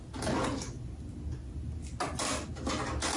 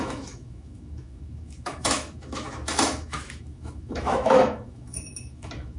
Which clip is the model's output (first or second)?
second